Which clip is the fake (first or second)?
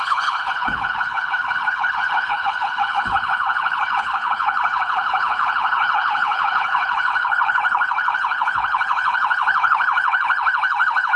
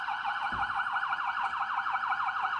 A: first